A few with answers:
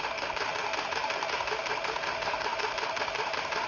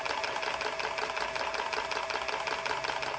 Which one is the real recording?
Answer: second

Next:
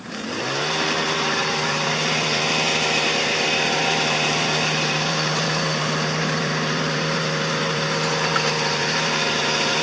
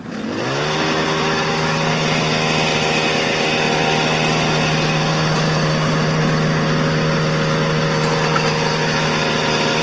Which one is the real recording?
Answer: second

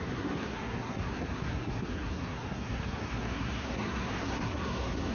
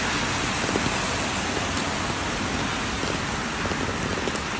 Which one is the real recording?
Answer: second